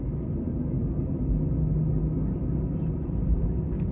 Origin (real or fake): real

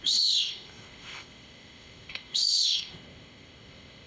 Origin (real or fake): fake